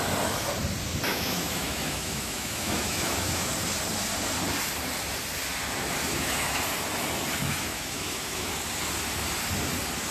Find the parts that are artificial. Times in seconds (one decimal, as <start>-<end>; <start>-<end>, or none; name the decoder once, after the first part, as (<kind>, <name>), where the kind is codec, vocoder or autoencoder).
1.1-3.5 (autoencoder, DAC-VAE); 6.0-6.6; 7.4-8.5